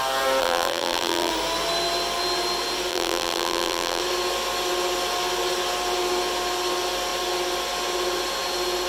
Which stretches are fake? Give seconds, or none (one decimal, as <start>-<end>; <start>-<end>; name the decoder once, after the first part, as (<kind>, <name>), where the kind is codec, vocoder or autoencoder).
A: 0.4-1.3 (vocoder, BigVGAN v2); 2.9-4.0